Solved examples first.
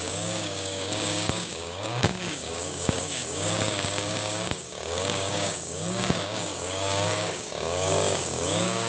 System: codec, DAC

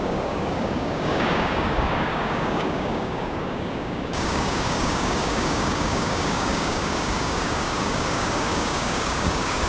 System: codec, DAC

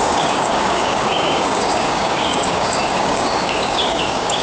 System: codec, DAC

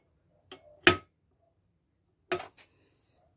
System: none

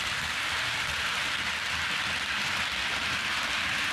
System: none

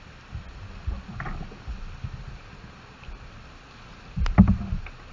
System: none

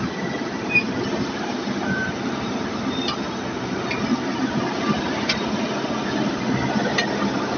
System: none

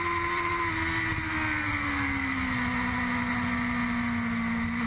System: none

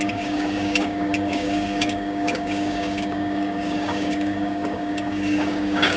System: codec, DAC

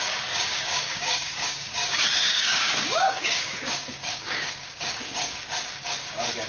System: codec, DAC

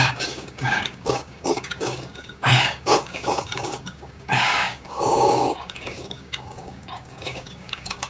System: codec, DAC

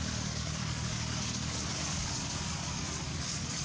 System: codec, DAC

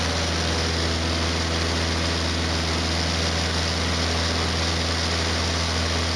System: none